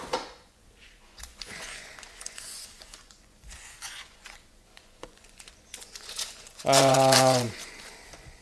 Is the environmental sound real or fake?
fake